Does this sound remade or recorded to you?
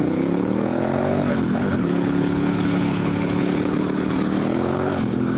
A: remade